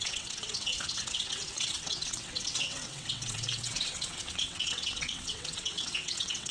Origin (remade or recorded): remade